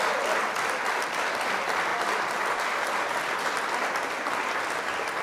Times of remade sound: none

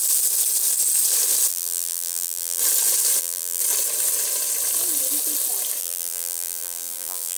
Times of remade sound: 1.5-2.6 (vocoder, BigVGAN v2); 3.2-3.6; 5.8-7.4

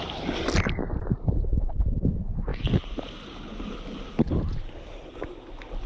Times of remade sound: none

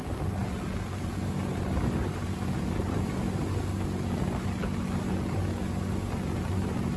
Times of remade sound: none

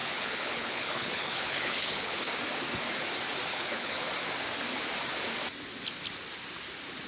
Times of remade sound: 0.0-2.2 (codec, HILCodec); 3.5-4.1